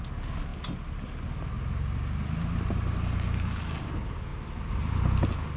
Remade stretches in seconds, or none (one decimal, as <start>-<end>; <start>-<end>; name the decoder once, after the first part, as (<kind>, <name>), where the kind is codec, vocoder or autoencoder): none